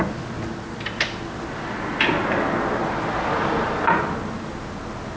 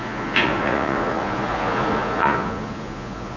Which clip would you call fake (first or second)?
second